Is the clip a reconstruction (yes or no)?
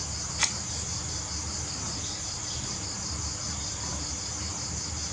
no